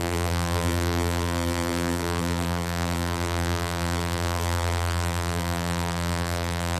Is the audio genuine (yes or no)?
no